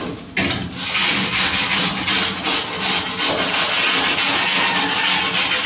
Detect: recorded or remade recorded